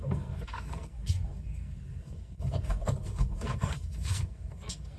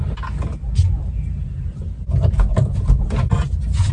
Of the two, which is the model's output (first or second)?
first